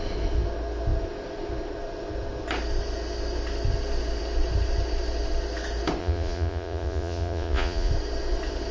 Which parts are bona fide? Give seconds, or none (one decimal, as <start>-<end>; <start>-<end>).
0.0-6.0; 7.9-8.7

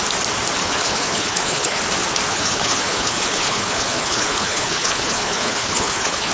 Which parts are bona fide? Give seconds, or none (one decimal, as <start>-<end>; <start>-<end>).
0.0-0.6; 1.8-2.3

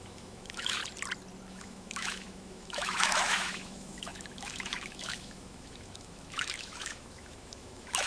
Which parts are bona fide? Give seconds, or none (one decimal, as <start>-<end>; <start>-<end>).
0.8-1.5

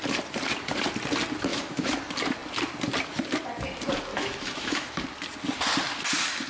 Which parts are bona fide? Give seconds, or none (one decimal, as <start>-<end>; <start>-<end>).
0.0-1.5; 2.0-4.1; 5.0-6.5

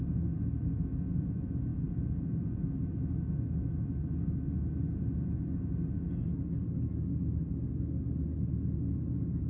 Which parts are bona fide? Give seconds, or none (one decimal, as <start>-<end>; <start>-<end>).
0.0-1.7; 2.6-9.5

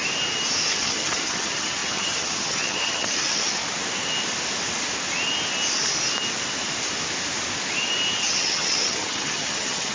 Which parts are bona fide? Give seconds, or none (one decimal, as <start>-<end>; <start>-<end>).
0.0-0.7; 3.6-8.2

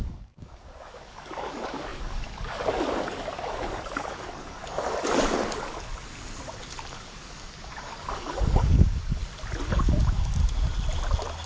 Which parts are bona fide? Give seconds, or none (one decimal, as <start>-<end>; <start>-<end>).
5.9-6.9; 9.2-9.7; 10.4-11.5

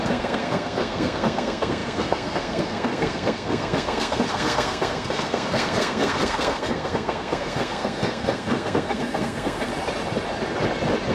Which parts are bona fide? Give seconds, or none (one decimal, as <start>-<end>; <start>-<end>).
9.7-11.1